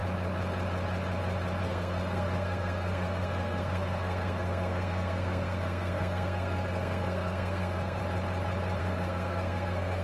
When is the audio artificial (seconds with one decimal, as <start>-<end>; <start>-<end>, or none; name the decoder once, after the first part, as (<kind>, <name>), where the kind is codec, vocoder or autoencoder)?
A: 1.6-8.0 (codec, SNAC); 8.8-10.0